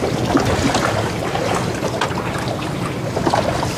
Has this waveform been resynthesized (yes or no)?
no